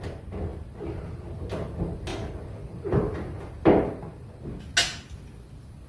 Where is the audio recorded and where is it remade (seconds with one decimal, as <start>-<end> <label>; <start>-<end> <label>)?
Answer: 0.0-5.9 recorded